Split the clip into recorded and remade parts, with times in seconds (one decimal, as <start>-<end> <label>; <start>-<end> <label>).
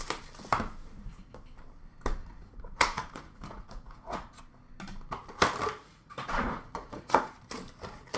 0.0-2.2 recorded; 2.2-4.4 remade; 4.4-5.8 recorded; 5.8-7.4 remade; 7.4-8.2 recorded